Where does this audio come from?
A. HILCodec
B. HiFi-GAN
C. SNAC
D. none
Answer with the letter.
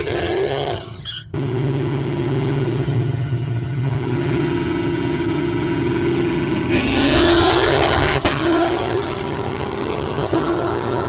B